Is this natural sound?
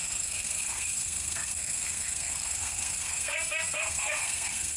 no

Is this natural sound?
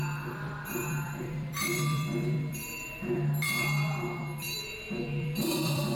no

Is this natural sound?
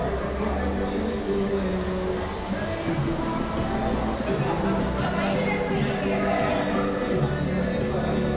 yes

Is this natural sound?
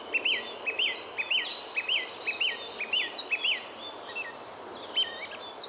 yes